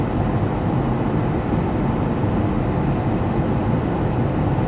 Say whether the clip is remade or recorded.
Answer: recorded